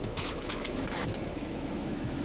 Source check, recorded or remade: remade